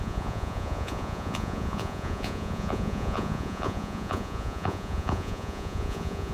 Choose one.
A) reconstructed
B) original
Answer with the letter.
A